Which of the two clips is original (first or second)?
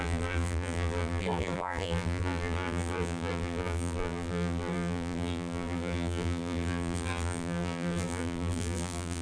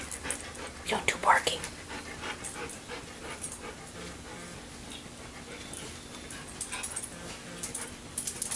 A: second